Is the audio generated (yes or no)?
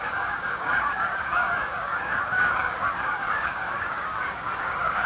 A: yes